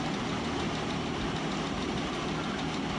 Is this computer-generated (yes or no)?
no